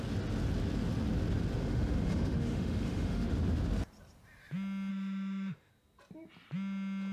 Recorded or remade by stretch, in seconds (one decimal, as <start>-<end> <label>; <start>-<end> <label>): 0.0-1.6 recorded; 1.6-3.3 remade; 3.3-4.9 recorded; 4.9-5.7 remade; 5.7-7.1 recorded